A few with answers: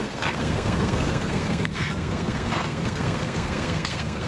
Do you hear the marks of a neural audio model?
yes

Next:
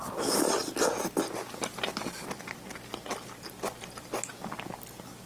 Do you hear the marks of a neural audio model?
no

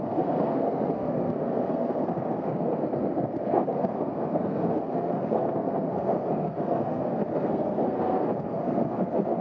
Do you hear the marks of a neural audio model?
yes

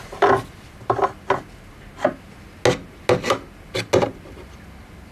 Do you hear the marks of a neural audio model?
no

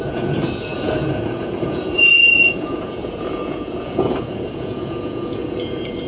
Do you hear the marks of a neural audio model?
yes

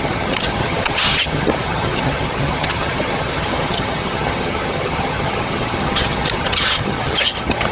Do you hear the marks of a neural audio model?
yes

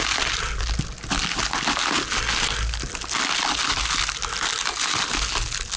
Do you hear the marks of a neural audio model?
no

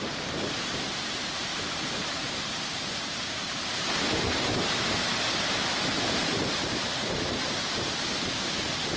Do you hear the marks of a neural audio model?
yes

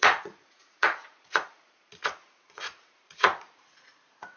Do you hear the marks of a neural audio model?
yes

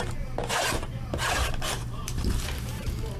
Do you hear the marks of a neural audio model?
yes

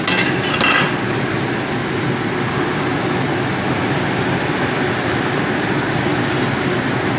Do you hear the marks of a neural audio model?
no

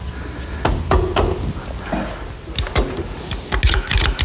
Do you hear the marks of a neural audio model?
no